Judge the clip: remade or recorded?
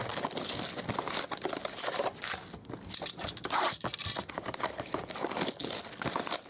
recorded